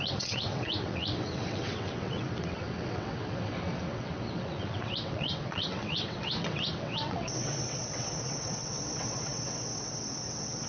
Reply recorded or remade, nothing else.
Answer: remade